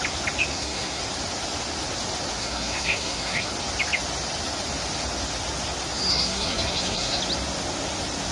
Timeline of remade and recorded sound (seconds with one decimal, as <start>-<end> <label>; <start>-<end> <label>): 0.0-0.5 recorded; 0.5-1.0 remade; 1.0-2.4 recorded; 2.4-3.5 remade; 3.5-6.1 recorded; 6.1-7.2 remade; 7.2-8.3 recorded